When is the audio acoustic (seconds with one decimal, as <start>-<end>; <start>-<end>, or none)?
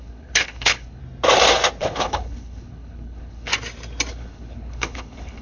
1.0-1.8; 3.5-4.1